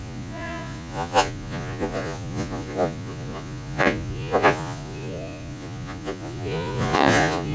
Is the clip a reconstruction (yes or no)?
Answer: yes